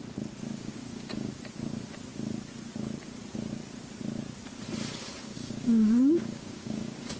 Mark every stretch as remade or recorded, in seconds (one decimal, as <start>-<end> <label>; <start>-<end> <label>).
0.0-0.5 recorded; 0.5-1.4 remade; 1.4-5.3 recorded; 5.3-7.2 remade